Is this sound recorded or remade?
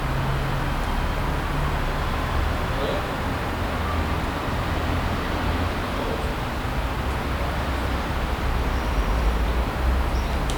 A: recorded